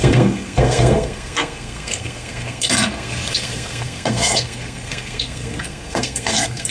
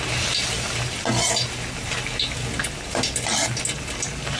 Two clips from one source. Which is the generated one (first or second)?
first